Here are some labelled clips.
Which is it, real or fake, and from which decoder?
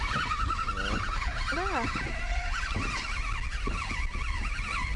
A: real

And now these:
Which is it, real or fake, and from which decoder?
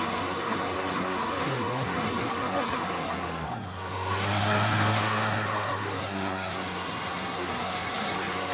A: fake, codec, SNAC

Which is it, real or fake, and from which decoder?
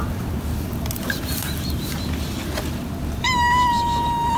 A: real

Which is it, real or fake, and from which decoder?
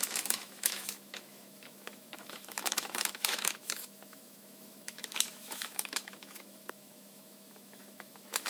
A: fake, autoencoder, DAC-VAE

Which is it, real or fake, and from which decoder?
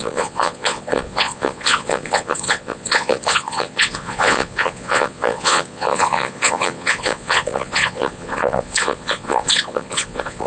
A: fake, vocoder, Vocos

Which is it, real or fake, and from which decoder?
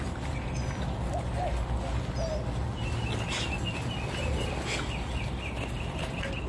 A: real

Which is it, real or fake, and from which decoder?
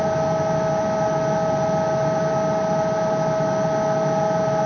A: real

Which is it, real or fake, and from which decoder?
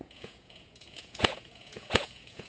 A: fake, vocoder, Vocos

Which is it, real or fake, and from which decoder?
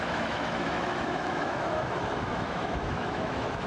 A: fake, autoencoder, DAC-VAE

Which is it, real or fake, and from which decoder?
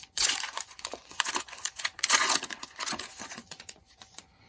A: fake, vocoder, Vocos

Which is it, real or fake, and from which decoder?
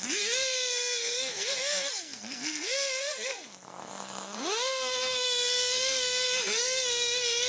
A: fake, codec, SNAC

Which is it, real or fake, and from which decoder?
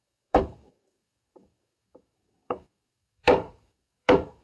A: fake, codec, DAC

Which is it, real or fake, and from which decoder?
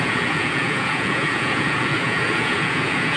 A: fake, vocoder, Vocos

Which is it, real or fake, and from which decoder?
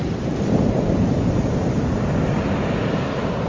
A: real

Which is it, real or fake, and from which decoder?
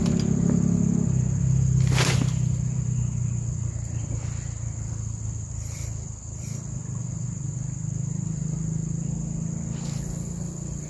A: real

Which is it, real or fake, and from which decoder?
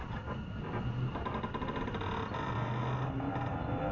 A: real